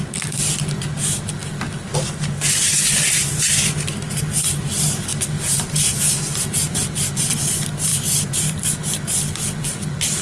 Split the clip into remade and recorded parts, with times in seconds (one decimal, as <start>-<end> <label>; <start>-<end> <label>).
0.0-10.2 recorded